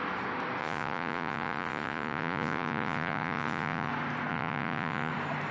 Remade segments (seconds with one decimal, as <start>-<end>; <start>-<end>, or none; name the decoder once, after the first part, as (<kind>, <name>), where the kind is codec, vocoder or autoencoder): 0.6-3.9 (vocoder, Vocos); 4.3-5.1